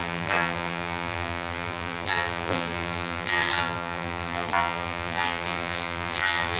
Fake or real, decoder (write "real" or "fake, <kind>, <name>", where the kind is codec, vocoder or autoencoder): fake, vocoder, BigVGAN v2